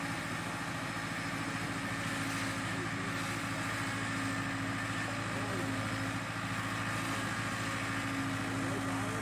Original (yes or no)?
yes